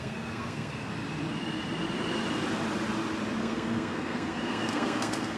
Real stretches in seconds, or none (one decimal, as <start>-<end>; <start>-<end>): 0.9-3.4